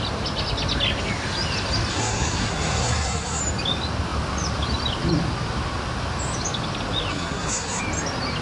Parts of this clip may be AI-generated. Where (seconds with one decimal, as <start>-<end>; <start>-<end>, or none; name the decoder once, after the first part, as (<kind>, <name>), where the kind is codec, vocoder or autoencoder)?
1.9-3.4 (codec, SNAC); 7.1-7.8